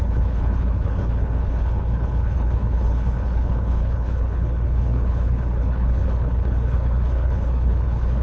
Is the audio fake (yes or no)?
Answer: yes